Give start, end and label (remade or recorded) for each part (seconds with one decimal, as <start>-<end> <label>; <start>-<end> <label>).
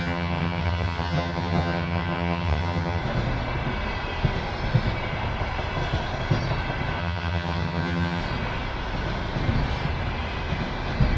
0.0-3.0 remade; 3.0-7.0 recorded; 7.0-8.2 remade; 8.2-11.2 recorded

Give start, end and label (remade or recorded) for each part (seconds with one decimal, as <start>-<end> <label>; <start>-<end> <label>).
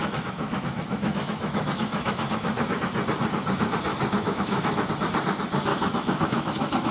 0.0-2.8 remade; 2.8-3.9 recorded; 3.9-4.9 remade; 4.9-5.7 recorded; 5.7-6.9 remade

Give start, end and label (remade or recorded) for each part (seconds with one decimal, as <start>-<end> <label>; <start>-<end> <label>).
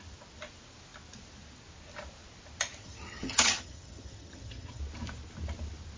0.0-2.8 recorded; 2.8-4.8 remade; 4.8-6.0 recorded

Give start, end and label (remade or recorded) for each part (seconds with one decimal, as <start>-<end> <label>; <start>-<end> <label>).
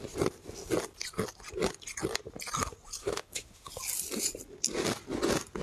0.0-3.0 recorded; 3.0-3.7 remade; 3.7-5.6 recorded